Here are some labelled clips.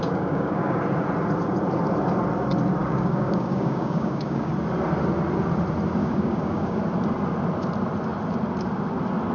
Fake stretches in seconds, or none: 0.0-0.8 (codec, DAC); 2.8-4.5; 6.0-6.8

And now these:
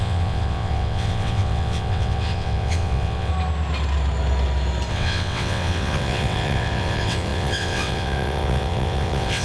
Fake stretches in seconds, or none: 0.0-3.3 (vocoder, WaveNeXt); 4.9-9.4

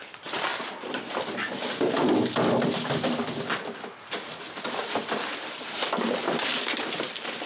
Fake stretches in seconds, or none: 0.0-0.5 (vocoder, BigVGAN v2); 2.7-6.5; 7.1-7.5

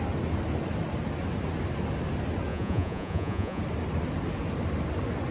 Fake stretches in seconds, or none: 2.5-3.6 (vocoder, Vocos)

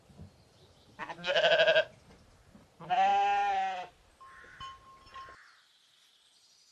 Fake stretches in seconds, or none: 1.0-1.5 (autoencoder, DAC-VAE)

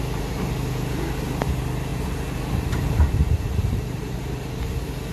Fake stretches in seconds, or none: 1.9-5.1 (vocoder, BigVGAN v2)